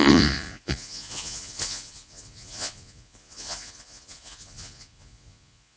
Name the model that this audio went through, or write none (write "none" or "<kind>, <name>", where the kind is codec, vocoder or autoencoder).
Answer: vocoder, Vocos